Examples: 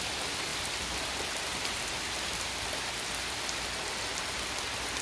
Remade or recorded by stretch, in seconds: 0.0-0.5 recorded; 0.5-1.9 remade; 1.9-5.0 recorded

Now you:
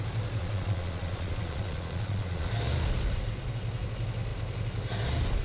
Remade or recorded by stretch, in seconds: 0.0-0.4 recorded; 0.4-2.5 remade; 2.5-5.4 recorded

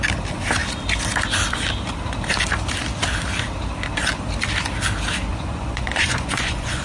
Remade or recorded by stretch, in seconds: 0.0-5.3 recorded; 5.3-6.8 remade

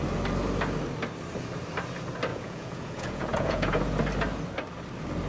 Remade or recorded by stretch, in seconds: 0.0-2.3 recorded; 2.3-3.8 remade; 3.8-5.3 recorded